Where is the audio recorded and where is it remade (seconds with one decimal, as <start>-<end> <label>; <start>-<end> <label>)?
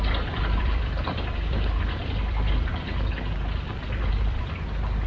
0.0-2.7 remade; 2.7-4.1 recorded; 4.1-5.1 remade